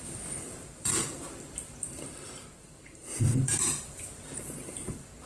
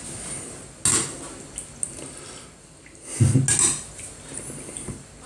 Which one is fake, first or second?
first